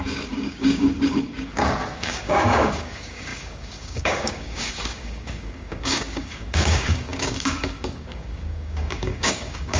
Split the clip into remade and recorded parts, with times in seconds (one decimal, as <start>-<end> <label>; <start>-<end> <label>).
0.0-9.8 remade